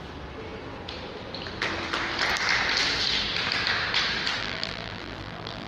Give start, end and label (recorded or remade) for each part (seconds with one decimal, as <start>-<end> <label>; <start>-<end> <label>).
0.0-4.4 recorded; 4.4-5.7 remade